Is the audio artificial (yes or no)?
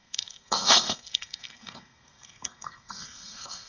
yes